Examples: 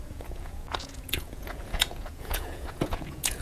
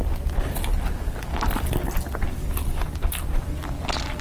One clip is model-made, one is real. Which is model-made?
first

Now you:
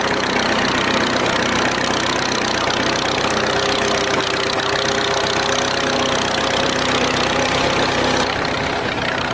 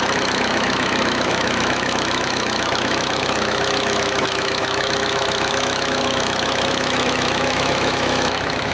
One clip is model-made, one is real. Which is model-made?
second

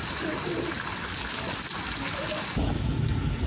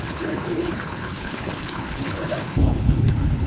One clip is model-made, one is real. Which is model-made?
second